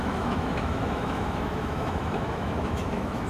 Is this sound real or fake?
fake